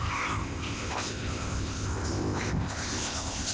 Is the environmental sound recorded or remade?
remade